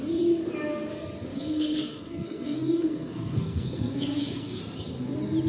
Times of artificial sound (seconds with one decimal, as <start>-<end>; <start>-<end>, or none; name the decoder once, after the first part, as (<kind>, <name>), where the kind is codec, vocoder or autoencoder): 1.3-4.6 (codec, SNAC)